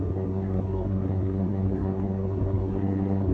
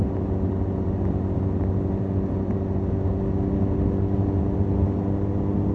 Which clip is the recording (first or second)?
second